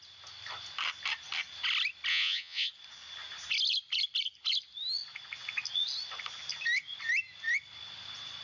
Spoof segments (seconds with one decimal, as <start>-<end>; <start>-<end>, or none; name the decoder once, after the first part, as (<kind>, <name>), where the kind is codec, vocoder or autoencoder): 2.1-2.7 (vocoder, Vocos)